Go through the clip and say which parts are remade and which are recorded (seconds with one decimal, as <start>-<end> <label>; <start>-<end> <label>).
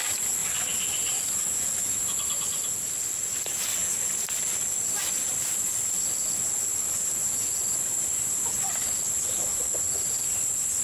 0.0-0.4 remade; 0.4-2.8 recorded; 2.8-3.8 remade; 3.8-5.3 recorded; 5.3-10.8 remade